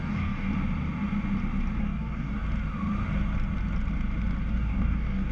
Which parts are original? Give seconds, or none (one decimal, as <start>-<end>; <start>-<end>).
0.5-1.8; 2.4-4.5